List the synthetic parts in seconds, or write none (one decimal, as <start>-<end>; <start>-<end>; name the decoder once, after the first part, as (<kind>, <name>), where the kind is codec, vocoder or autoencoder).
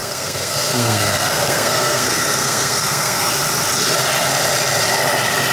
0.0-3.3 (codec, SNAC)